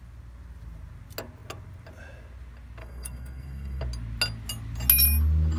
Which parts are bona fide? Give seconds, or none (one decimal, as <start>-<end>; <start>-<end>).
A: 0.0-2.8; 3.8-5.6